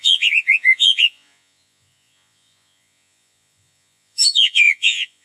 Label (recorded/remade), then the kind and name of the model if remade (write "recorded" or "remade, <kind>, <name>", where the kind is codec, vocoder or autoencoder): remade, vocoder, Vocos